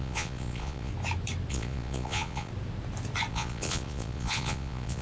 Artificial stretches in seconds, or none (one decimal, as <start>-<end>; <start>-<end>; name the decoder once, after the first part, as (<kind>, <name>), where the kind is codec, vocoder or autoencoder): 0.0-0.9 (vocoder, Vocos); 1.5-2.5; 3.3-5.0